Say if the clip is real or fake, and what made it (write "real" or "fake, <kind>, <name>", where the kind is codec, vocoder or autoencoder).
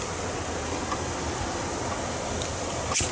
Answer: real